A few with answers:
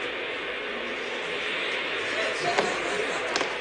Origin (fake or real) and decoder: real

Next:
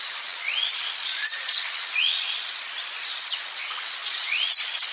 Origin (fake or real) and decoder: fake, vocoder, Vocos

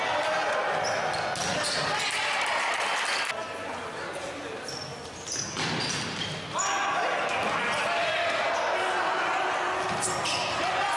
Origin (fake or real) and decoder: real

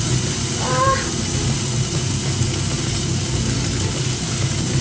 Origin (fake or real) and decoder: real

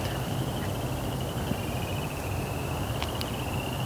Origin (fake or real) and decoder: fake, vocoder, BigVGAN v2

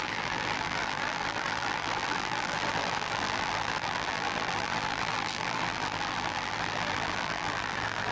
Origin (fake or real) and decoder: fake, vocoder, BigVGAN v2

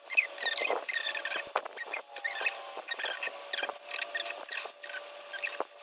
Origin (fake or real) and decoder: real